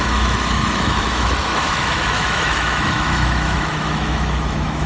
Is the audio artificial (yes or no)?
yes